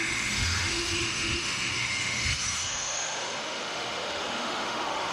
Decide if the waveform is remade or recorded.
remade